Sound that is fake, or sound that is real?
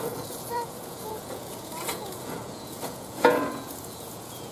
fake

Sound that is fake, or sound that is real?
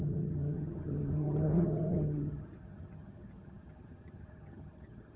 fake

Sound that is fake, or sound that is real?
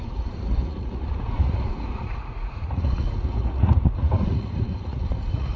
fake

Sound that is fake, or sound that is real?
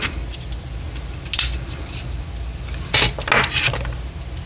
real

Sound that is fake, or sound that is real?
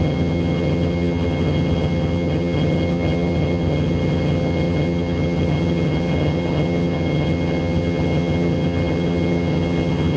fake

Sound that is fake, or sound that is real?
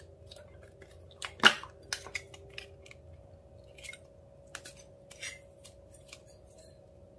real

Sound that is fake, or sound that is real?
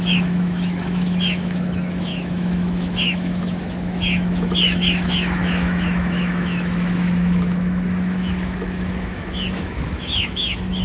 fake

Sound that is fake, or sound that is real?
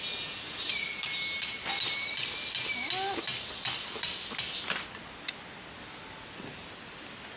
real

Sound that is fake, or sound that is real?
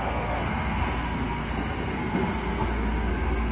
fake